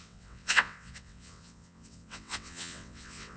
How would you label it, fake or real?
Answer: fake